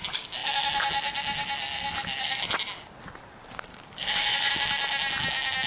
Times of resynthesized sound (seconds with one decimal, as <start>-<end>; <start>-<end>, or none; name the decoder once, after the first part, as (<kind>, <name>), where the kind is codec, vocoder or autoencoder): 3.7-4.5 (codec, DAC)